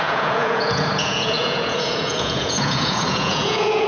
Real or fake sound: fake